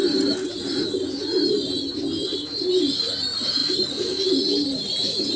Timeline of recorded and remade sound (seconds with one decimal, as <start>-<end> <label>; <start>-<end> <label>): 0.0-5.4 recorded